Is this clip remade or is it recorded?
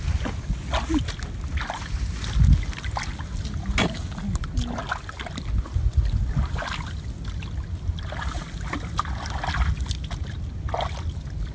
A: recorded